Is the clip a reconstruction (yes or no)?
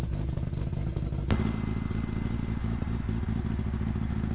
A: no